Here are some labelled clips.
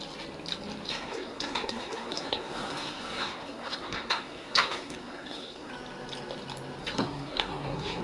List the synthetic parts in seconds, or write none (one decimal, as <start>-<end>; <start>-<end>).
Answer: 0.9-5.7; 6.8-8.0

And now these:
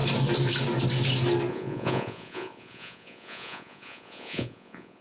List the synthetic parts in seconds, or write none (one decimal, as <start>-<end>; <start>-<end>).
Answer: 1.5-5.0

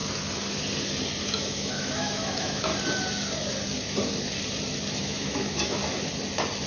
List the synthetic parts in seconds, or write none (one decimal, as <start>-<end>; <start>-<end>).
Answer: 1.2-2.7; 5.0-5.8